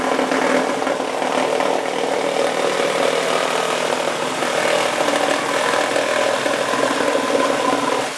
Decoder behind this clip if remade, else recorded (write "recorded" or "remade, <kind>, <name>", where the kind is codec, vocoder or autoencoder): recorded